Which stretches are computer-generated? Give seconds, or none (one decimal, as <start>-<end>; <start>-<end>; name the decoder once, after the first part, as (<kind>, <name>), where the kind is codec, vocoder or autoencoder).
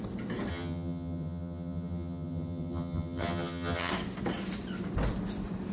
0.5-3.9 (vocoder, HiFi-GAN)